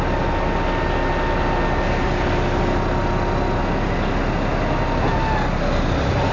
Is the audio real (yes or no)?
yes